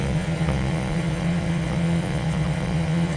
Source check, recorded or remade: remade